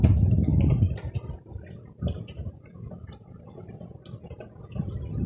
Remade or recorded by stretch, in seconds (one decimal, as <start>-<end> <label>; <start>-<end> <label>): 0.0-5.3 recorded

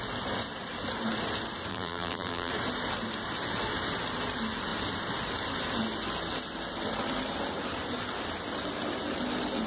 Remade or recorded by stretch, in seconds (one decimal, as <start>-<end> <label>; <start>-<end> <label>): 0.0-1.7 recorded; 1.7-2.5 remade; 2.5-9.7 recorded

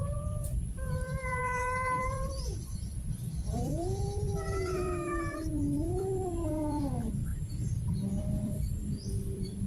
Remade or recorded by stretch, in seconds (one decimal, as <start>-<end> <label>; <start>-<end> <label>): 0.0-7.3 remade; 7.3-8.2 recorded; 8.2-9.7 remade

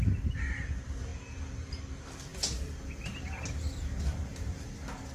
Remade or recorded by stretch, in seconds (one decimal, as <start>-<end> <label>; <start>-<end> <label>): 0.0-5.1 recorded

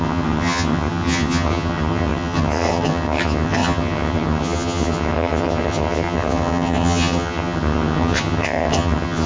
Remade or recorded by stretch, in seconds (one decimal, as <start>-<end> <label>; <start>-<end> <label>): 0.0-9.3 remade

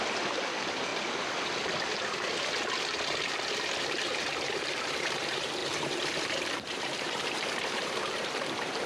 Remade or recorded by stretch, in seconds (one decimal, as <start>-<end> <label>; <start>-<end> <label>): 0.0-0.9 remade; 0.9-3.5 recorded; 3.5-8.9 remade

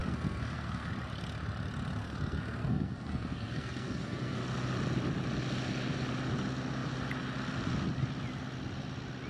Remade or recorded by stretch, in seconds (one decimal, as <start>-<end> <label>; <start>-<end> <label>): 0.0-0.9 remade; 0.9-2.0 recorded; 2.0-4.4 remade; 4.4-9.3 recorded